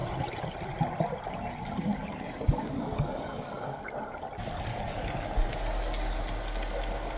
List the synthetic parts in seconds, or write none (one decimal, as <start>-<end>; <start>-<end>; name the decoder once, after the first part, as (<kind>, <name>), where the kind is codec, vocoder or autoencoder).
1.9-3.8 (codec, DAC); 4.7-6.2

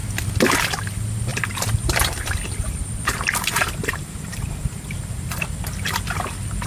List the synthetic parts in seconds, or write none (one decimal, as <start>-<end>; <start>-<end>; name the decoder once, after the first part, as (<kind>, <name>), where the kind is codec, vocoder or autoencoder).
1.3-5.3 (vocoder, BigVGAN v2)